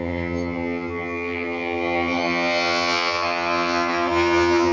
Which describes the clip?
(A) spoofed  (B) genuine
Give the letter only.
A